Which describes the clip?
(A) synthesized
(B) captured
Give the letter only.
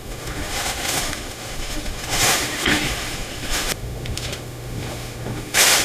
A